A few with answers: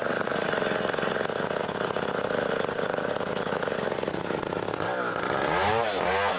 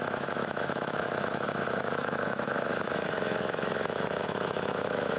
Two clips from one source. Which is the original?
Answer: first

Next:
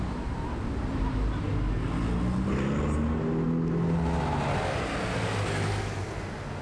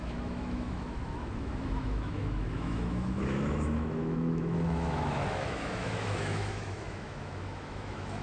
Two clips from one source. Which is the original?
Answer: first